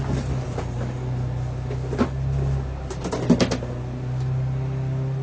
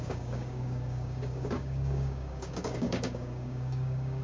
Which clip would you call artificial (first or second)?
second